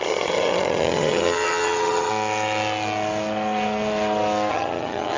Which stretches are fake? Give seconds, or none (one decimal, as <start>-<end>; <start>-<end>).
0.0-2.1; 4.5-5.2